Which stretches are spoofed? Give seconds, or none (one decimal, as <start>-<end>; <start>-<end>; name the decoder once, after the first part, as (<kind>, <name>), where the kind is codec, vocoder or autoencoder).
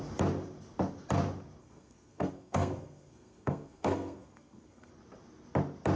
1.6-4.9 (codec, SNAC)